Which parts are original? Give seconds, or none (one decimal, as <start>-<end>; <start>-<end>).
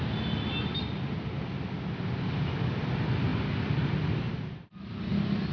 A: 0.0-5.5